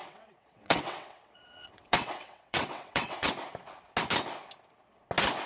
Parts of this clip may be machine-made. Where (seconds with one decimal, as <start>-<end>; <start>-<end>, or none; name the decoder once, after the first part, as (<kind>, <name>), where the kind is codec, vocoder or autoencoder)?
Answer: 0.0-3.3 (vocoder, WaveNeXt)